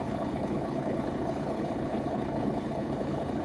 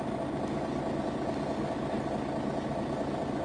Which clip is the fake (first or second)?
first